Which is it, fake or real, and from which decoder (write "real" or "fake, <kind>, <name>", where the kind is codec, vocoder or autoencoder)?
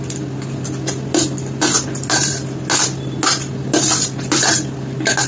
real